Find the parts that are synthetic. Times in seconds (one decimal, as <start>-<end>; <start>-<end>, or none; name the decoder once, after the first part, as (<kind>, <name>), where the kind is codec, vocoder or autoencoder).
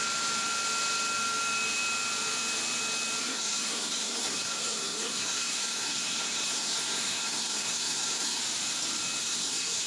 3.2-8.4 (codec, SNAC); 9.2-9.9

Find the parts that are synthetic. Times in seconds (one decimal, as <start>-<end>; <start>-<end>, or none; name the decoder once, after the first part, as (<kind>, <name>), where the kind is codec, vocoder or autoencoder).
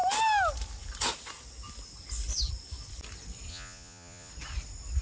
3.5-4.3 (vocoder, Vocos)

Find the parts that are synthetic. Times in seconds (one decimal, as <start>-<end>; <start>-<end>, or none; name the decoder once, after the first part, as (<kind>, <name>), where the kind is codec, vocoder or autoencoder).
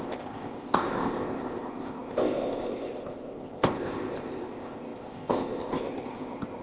0.0-6.6 (codec, ZipCodec)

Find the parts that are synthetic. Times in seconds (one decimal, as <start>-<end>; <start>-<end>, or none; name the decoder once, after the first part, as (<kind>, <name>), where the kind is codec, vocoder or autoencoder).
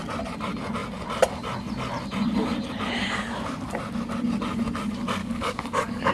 5.2-6.1 (codec, DAC)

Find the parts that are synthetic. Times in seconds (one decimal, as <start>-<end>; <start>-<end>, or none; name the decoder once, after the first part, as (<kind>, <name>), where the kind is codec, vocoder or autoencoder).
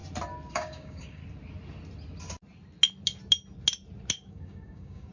0.5-1.2 (codec, DAC); 4.3-5.1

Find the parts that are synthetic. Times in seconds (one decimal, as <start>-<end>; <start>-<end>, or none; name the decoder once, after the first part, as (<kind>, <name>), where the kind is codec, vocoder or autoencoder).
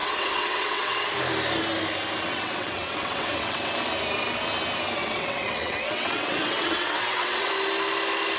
0.0-1.1 (vocoder, WaveNeXt); 2.3-3.7; 5.0-7.5